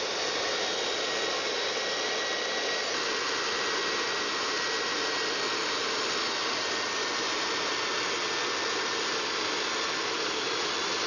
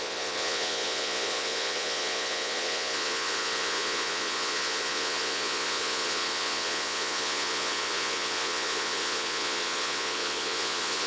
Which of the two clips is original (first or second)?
first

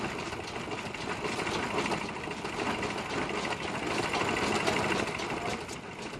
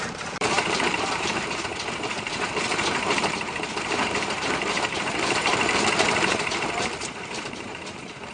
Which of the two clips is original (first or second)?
first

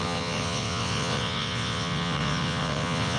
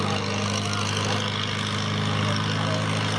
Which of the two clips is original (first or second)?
second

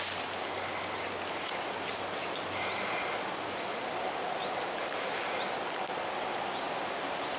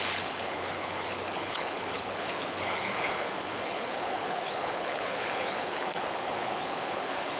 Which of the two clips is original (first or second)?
first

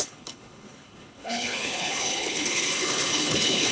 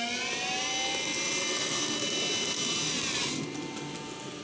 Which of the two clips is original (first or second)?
second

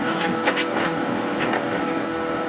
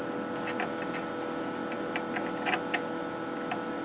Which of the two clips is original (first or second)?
second